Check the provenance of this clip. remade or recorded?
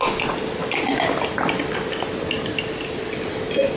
recorded